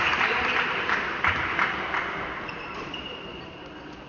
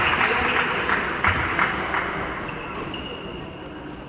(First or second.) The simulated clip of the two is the first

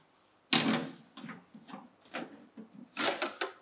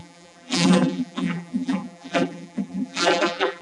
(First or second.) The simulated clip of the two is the second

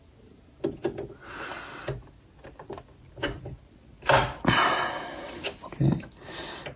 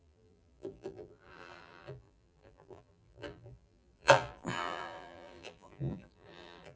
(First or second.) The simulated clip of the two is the second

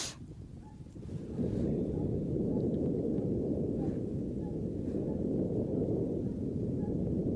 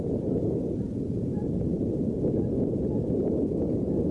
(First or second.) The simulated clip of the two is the second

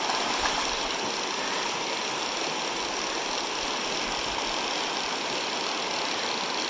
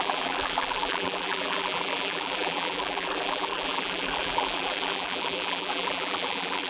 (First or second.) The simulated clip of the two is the second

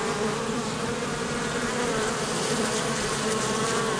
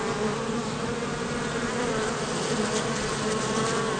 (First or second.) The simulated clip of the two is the first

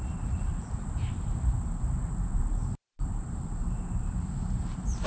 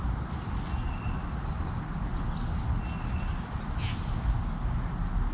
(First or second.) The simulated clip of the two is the first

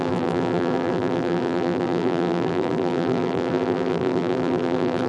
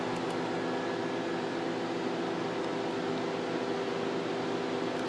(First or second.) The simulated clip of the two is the first